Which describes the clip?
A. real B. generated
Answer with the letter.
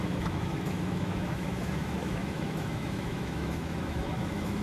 B